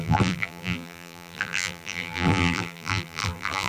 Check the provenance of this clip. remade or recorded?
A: remade